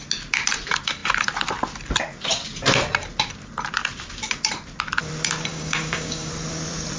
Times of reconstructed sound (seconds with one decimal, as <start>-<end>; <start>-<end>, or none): 5.5-6.3